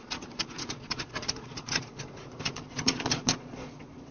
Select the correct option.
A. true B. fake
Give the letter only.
B